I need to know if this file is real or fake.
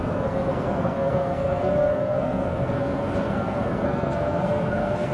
fake